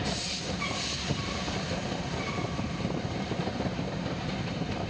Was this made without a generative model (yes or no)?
no